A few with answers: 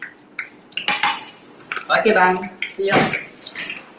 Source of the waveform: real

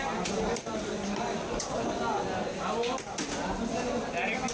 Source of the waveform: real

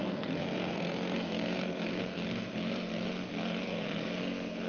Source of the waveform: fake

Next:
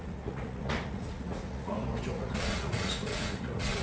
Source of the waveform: fake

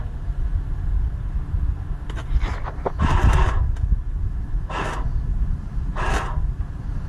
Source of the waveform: real